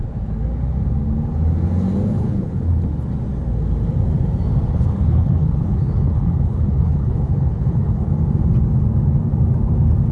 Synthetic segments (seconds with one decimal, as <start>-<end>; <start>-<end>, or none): 2.1-2.8; 4.7-8.1